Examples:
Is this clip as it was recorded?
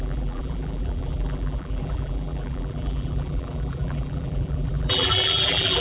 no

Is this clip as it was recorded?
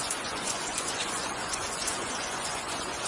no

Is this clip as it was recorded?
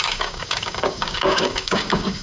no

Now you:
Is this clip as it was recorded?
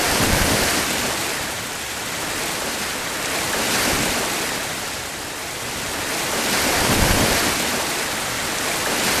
no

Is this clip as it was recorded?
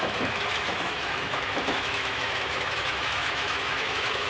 no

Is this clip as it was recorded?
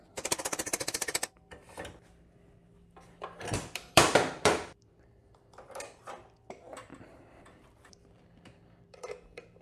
no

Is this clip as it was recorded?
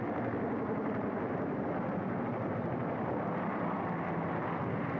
yes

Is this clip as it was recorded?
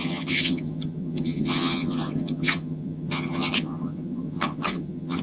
no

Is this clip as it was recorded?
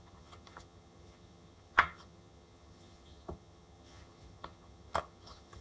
no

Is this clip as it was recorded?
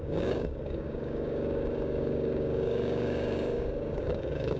no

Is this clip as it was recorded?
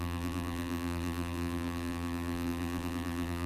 no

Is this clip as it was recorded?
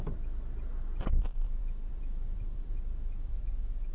no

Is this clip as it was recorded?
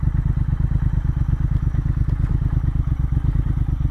yes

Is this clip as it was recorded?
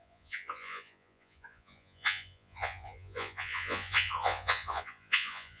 no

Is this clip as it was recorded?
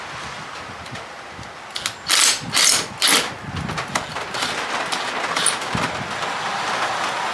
yes